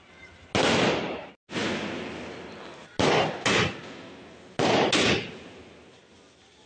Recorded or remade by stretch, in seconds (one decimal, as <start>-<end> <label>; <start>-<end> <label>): 0.0-6.7 recorded